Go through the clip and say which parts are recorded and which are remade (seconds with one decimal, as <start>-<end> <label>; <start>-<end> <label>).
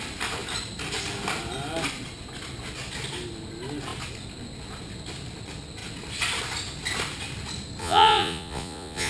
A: 0.0-7.8 recorded; 7.8-9.1 remade